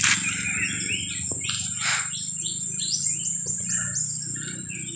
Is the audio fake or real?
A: real